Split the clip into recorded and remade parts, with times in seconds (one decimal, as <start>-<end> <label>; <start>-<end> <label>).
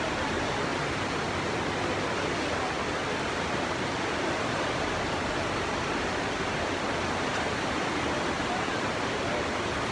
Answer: 0.0-9.9 recorded